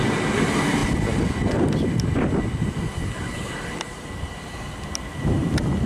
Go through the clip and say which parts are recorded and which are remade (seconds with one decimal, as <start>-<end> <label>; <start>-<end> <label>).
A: 0.0-5.9 recorded